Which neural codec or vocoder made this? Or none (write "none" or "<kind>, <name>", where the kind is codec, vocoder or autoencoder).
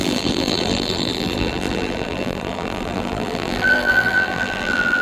vocoder, BigVGAN v2